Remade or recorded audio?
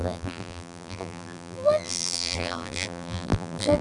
remade